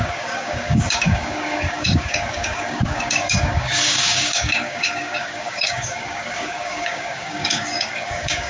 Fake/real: fake